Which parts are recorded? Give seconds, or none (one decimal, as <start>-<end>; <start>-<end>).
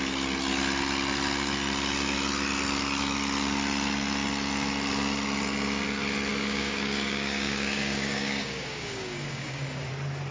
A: 0.0-6.3; 9.9-10.3